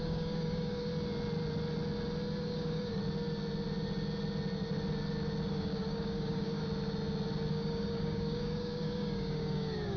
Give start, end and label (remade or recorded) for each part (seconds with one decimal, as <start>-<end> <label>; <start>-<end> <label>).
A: 0.0-0.9 remade; 0.9-2.4 recorded; 2.4-3.0 remade; 3.0-5.5 recorded; 5.5-6.6 remade; 6.6-7.5 recorded; 7.5-10.0 remade